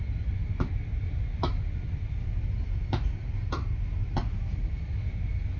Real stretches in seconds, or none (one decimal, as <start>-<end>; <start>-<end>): 0.0-5.6